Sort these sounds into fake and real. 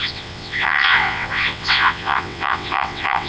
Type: fake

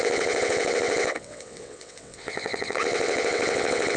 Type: fake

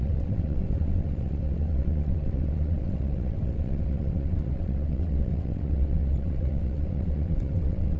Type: fake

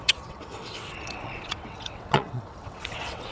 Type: fake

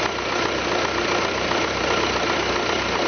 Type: real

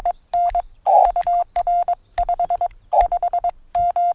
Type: real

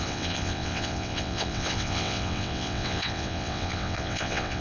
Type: fake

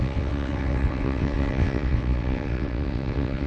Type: fake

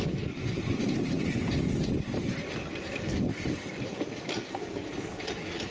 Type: real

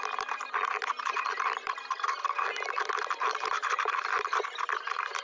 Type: real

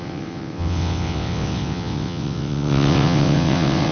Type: fake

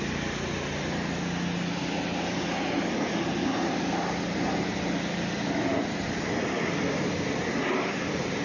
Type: real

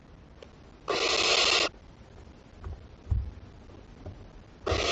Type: real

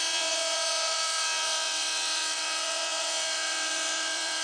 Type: fake